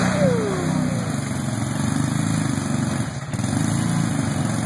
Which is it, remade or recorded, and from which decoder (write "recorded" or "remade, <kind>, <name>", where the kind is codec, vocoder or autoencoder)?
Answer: recorded